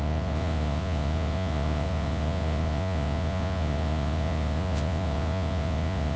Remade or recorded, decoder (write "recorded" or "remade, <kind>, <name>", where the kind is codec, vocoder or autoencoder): remade, vocoder, Vocos